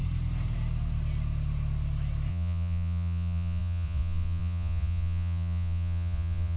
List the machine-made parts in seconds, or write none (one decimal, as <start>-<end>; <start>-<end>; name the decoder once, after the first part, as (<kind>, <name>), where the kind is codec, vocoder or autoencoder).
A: 2.3-6.6 (vocoder, Vocos)